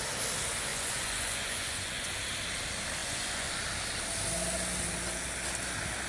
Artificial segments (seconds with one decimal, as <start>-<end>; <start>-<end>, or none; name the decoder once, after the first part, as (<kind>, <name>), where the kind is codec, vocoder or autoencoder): 0.7-2.1 (vocoder, Vocos); 3.0-3.6